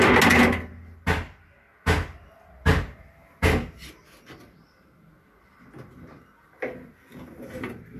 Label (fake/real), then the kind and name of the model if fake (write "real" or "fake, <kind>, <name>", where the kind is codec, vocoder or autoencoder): real